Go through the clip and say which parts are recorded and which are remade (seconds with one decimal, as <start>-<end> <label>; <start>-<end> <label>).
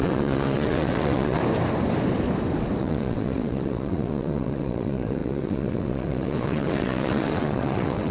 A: 0.0-1.4 remade; 1.4-2.8 recorded; 2.8-8.1 remade